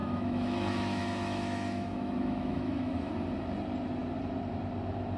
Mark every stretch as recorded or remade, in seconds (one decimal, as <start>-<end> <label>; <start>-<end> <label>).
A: 0.0-3.1 remade; 3.1-5.2 recorded